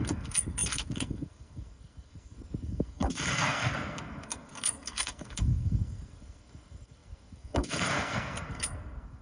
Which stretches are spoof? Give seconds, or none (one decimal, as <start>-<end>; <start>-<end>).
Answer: 0.0-9.2